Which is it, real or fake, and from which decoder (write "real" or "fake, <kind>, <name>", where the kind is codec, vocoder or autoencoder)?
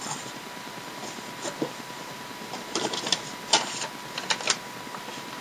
real